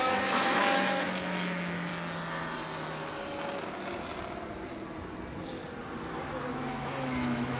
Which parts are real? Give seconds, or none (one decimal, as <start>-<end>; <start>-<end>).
1.9-6.5